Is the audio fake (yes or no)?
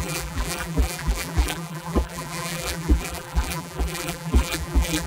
yes